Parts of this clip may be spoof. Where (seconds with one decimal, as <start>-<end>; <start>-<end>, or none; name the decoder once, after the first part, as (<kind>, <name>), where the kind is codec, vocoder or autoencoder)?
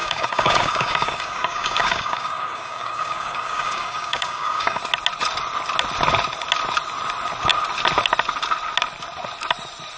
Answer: 0.0-4.8 (codec, DAC)